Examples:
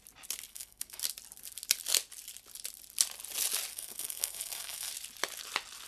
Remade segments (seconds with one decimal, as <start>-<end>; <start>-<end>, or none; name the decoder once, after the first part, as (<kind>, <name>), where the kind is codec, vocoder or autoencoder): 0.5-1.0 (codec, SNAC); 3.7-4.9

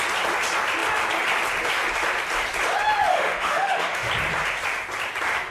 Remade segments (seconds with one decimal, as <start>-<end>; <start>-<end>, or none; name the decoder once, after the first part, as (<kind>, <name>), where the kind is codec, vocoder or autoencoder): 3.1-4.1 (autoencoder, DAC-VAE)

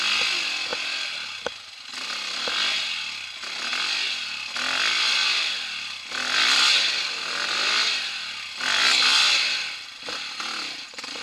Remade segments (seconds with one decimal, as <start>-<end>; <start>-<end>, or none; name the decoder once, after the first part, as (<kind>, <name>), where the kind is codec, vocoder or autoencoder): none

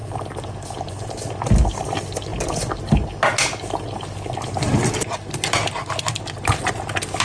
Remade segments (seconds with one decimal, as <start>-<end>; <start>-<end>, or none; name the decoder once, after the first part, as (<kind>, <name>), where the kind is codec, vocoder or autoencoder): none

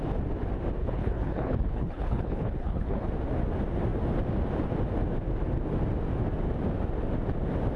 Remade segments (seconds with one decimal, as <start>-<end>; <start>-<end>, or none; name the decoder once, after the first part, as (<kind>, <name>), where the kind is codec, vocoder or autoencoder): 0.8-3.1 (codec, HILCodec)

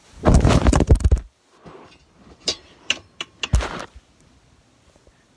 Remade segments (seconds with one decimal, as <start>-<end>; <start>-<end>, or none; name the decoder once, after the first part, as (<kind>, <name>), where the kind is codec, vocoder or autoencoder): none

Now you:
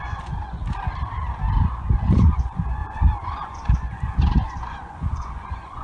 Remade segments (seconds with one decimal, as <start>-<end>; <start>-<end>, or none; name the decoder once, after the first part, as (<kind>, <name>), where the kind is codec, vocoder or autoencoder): 0.0-0.6 (vocoder, Vocos); 1.6-5.8